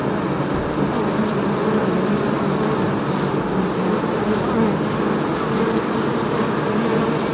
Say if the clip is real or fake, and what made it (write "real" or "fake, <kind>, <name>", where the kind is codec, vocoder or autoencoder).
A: real